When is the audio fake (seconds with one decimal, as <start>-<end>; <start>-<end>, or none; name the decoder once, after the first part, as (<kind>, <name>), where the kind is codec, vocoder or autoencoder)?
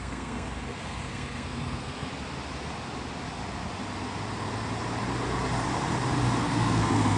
0.0-2.1 (codec, SNAC); 6.4-7.2